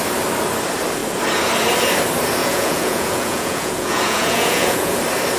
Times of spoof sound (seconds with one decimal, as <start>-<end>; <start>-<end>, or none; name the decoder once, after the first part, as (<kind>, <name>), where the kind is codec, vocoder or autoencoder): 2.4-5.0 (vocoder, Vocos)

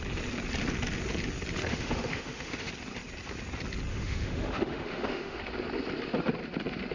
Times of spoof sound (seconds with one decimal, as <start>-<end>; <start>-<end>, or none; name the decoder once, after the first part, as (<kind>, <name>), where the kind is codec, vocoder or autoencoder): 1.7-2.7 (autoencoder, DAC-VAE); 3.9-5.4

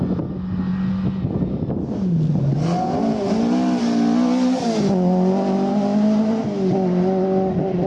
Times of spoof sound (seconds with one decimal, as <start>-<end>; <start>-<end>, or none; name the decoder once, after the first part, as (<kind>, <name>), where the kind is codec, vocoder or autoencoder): none

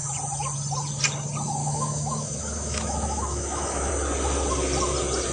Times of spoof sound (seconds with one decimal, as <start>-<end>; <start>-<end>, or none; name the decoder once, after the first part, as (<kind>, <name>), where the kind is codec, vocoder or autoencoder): 1.6-3.9 (autoencoder, DAC-VAE)

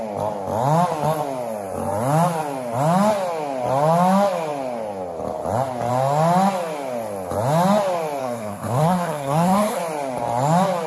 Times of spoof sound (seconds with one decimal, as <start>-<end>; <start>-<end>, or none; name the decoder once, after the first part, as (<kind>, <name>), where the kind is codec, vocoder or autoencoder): 8.2-9.8 (codec, SNAC)